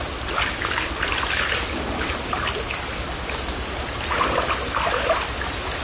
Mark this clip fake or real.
real